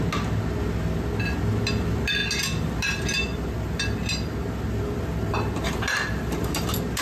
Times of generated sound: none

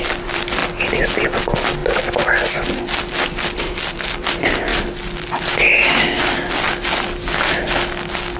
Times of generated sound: 0.0-0.6 (vocoder, BigVGAN v2); 1.4-1.8; 3.6-4.7

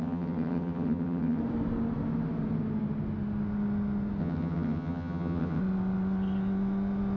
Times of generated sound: 0.0-1.4 (vocoder, HiFi-GAN); 4.2-5.6